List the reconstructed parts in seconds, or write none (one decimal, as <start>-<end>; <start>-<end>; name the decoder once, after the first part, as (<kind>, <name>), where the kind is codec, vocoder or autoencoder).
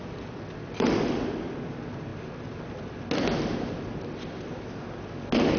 none